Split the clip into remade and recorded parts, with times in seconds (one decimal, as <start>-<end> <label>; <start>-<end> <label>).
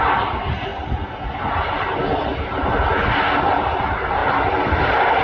0.0-5.2 recorded